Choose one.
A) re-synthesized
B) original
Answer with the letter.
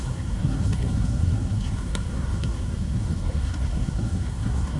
A